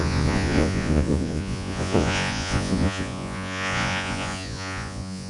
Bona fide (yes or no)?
no